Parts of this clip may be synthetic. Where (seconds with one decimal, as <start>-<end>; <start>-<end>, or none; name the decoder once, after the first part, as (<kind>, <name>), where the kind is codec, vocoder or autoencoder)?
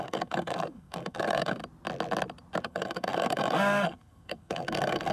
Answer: 0.0-1.6 (codec, SNAC); 2.6-5.1